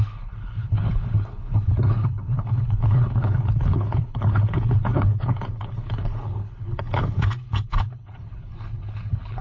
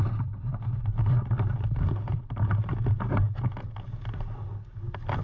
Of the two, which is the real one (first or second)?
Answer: second